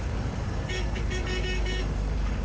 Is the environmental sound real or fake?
fake